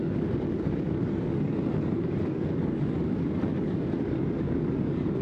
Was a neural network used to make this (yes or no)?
yes